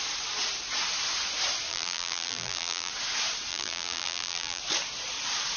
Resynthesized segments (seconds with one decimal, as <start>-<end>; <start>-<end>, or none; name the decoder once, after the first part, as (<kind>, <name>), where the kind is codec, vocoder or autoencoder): 1.7-2.9 (vocoder, BigVGAN v2); 3.5-4.6